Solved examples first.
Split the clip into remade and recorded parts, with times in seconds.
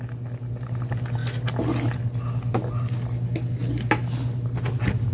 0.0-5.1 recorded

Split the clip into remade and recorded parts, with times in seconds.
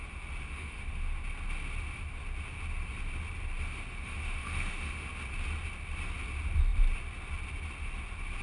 0.0-0.4 recorded; 0.4-0.9 remade; 0.9-3.9 recorded; 3.9-5.1 remade; 5.1-8.4 recorded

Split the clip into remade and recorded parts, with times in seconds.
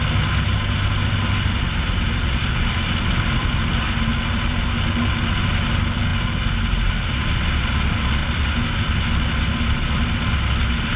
0.0-11.0 recorded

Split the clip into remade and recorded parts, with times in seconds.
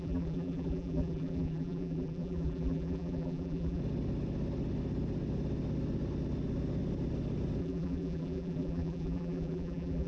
0.0-3.8 remade; 3.8-7.6 recorded; 7.6-10.1 remade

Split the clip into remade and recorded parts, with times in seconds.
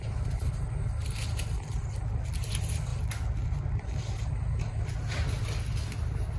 0.0-6.4 recorded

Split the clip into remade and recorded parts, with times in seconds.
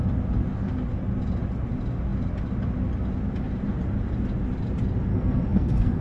0.0-5.1 recorded; 5.1-6.0 remade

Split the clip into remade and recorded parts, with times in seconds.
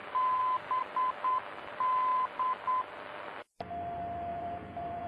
0.0-4.3 recorded; 4.3-5.1 remade